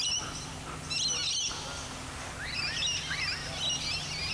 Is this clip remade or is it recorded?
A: recorded